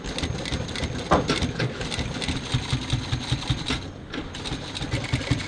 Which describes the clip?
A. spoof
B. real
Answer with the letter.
B